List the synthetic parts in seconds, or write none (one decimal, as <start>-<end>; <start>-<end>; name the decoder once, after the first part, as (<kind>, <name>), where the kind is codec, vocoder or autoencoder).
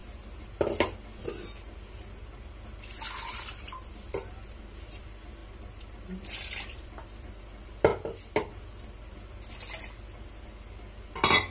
none